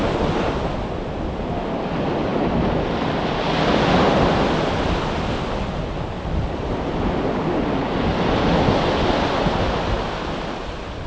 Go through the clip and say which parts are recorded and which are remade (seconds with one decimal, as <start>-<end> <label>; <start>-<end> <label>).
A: 0.0-11.1 recorded